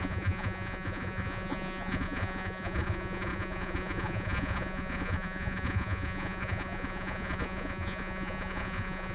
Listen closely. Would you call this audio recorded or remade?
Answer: remade